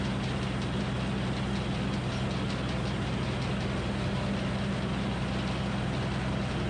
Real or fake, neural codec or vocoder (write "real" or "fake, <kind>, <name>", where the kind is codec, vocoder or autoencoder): real